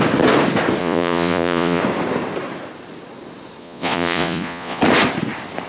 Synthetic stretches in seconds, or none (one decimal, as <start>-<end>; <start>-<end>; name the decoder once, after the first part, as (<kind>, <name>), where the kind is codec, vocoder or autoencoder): 0.8-1.8 (vocoder, Vocos); 3.6-4.8